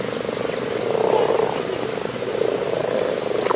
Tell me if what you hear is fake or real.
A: real